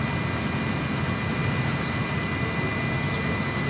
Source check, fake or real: real